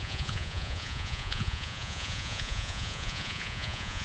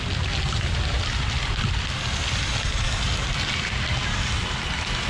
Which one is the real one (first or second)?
second